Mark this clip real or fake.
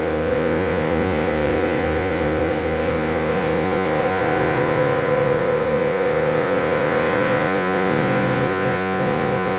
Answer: fake